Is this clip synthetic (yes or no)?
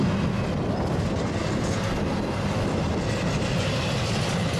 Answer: no